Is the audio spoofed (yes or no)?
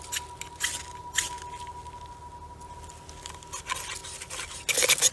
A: no